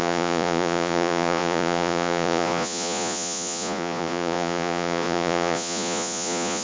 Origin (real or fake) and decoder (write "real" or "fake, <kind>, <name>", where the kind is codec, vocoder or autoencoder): fake, vocoder, Vocos